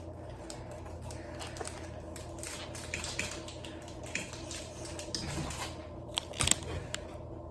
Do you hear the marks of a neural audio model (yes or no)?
no